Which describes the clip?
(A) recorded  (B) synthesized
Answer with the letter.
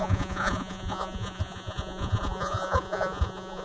B